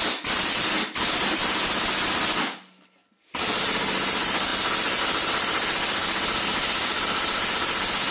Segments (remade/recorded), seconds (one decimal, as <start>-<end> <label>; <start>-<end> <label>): 0.0-8.1 recorded